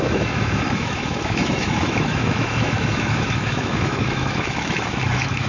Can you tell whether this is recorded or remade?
remade